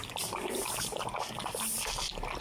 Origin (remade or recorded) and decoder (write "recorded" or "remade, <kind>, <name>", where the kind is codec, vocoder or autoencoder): recorded